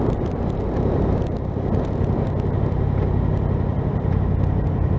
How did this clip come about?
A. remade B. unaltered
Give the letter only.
B